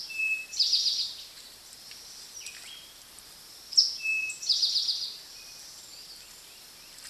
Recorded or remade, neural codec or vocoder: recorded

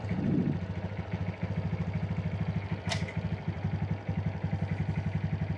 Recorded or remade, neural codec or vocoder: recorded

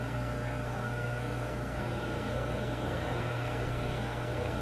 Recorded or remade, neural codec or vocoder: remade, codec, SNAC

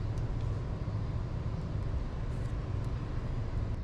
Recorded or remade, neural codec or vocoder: recorded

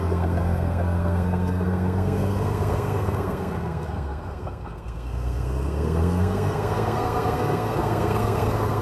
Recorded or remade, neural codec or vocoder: remade, codec, SNAC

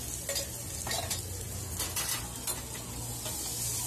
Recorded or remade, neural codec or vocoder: recorded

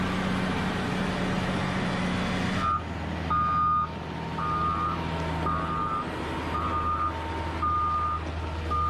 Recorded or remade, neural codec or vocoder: recorded